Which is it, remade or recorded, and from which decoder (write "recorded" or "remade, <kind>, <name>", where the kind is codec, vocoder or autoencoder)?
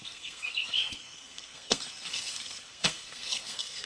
remade, codec, SNAC